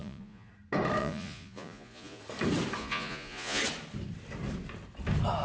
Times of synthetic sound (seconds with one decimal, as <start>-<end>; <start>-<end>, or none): 0.0-0.5; 1.0-2.2; 2.8-3.6